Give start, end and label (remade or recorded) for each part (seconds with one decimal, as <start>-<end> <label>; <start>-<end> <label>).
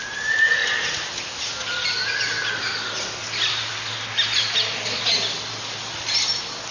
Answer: 0.0-6.7 recorded